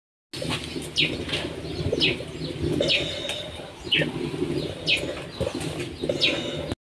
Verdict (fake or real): real